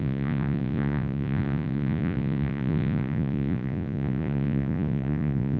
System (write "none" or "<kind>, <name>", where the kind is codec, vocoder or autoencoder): vocoder, Vocos